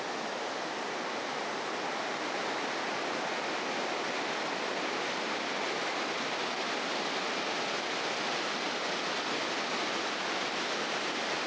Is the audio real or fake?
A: real